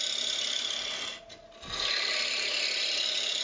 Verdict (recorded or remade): recorded